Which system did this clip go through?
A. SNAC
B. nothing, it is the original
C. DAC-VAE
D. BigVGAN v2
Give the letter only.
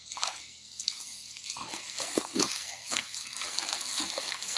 A